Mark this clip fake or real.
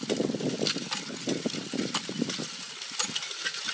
real